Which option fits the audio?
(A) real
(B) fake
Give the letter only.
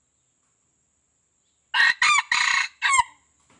A